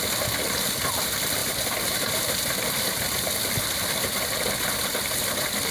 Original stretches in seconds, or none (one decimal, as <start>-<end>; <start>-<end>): 0.0-1.4; 2.4-5.7